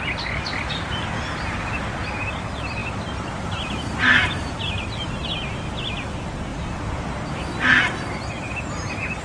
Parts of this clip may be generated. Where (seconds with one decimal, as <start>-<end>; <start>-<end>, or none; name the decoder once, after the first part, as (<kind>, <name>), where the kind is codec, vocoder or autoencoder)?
2.8-5.1 (vocoder, BigVGAN v2)